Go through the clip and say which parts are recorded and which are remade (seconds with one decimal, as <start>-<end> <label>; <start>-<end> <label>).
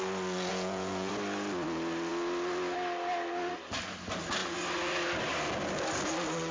0.0-0.5 recorded; 0.5-1.1 remade; 1.1-6.5 recorded